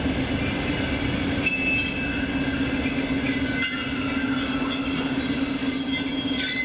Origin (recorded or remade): recorded